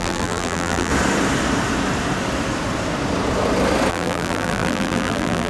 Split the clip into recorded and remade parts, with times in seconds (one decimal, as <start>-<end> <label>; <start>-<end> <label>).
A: 0.0-0.9 remade; 0.9-3.9 recorded; 3.9-5.5 remade